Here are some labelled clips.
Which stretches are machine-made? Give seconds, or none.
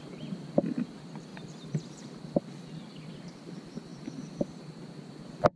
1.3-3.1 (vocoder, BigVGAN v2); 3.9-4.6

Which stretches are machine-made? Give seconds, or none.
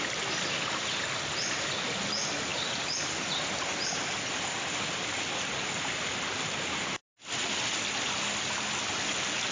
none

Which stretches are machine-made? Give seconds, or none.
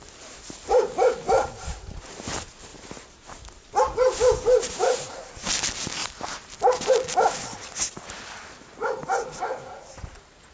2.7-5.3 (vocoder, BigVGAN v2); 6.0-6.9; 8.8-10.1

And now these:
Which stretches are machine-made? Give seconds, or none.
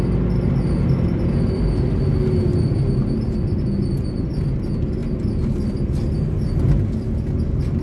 none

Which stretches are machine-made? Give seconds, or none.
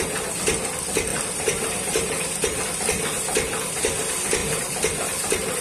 1.1-2.6 (vocoder, BigVGAN v2); 4.4-5.6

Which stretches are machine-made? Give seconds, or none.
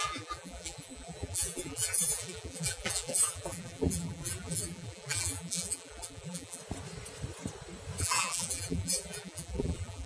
0.0-6.6 (vocoder, BigVGAN v2); 8.0-10.1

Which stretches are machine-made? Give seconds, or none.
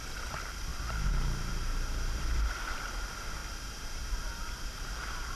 none